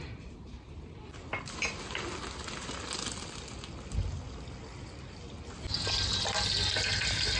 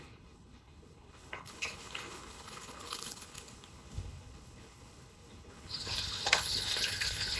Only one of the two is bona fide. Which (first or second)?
first